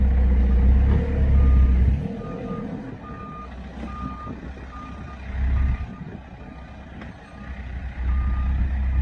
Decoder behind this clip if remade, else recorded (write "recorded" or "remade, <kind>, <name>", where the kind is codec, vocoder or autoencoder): recorded